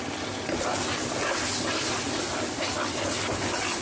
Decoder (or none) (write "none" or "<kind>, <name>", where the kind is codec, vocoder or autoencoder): none